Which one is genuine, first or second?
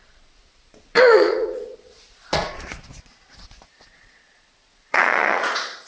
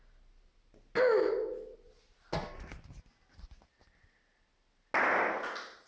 second